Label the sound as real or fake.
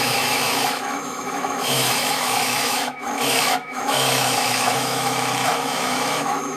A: fake